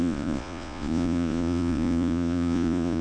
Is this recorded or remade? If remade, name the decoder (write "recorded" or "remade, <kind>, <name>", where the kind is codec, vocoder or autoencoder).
remade, vocoder, Vocos